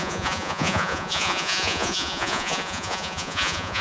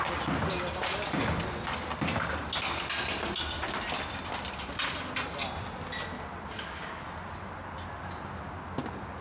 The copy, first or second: first